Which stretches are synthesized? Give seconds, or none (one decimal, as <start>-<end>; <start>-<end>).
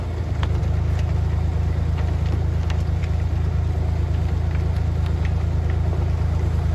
none